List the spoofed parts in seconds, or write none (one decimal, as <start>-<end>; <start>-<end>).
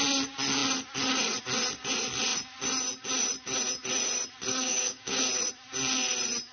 4.5-5.2